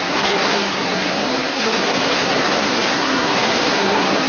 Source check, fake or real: fake